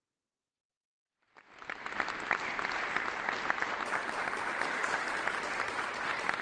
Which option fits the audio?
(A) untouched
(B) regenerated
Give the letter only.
B